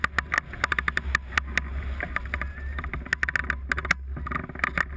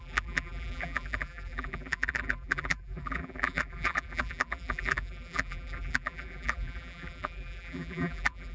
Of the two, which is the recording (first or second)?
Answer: first